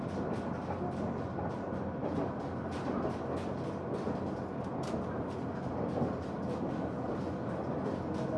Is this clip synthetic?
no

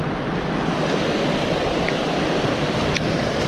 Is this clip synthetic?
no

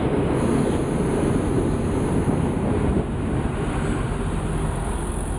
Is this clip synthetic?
no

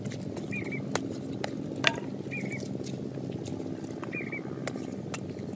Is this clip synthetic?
no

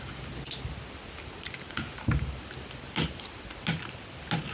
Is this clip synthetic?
no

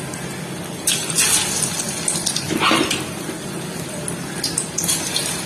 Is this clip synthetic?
no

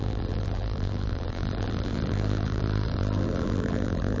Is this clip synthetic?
yes